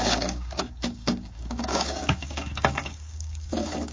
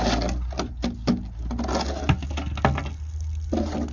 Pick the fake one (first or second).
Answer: first